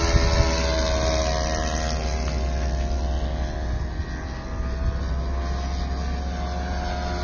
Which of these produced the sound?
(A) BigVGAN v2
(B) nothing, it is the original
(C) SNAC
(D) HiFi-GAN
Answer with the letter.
B